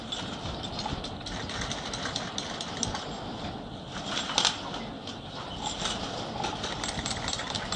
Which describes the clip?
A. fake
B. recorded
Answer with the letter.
B